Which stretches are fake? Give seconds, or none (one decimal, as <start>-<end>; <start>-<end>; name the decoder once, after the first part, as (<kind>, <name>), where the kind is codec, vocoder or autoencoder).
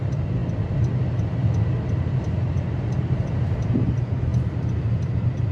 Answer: 0.0-0.4 (vocoder, BigVGAN v2); 2.3-4.3; 4.8-5.5